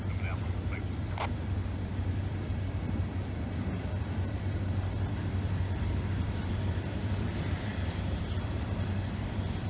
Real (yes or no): no